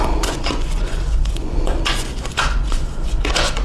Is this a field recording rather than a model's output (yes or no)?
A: no